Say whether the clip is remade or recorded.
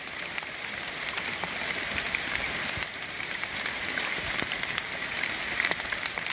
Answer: remade